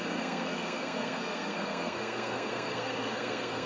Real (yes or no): no